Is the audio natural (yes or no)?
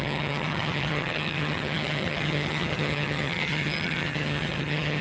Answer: no